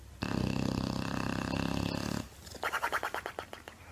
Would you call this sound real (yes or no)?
yes